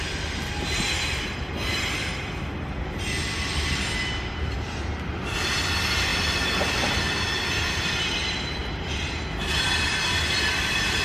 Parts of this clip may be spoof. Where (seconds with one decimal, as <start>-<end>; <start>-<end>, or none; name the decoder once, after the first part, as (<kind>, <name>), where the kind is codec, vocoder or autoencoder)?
none